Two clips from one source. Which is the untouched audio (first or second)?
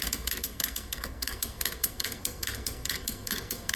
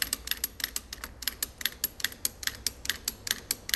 second